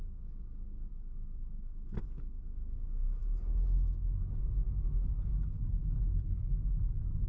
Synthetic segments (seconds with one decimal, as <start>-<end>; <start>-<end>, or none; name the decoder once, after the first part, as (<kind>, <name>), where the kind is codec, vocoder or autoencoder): 0.0-7.3 (codec, DAC)